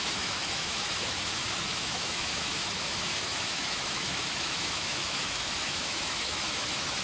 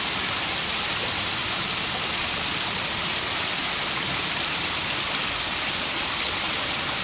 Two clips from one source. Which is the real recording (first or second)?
second